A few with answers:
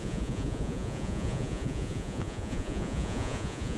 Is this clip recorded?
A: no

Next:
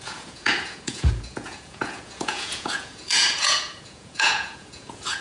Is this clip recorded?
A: no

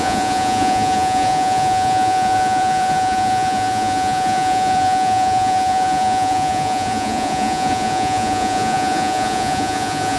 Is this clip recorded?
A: no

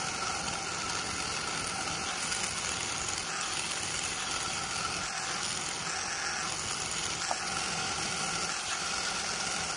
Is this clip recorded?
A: yes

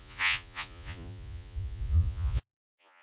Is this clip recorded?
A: no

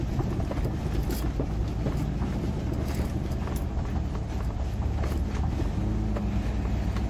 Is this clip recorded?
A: yes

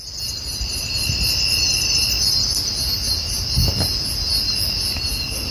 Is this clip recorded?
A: yes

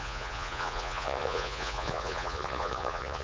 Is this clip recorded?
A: no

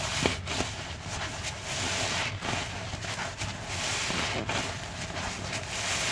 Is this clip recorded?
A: yes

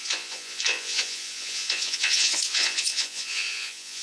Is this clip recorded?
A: no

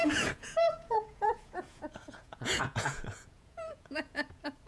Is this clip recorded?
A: no